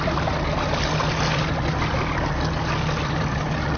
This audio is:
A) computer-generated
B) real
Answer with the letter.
B